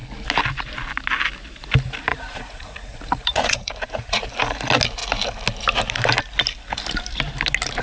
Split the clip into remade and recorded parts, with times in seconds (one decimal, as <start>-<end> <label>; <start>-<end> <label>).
0.0-2.1 recorded; 2.1-4.2 remade; 4.2-7.8 recorded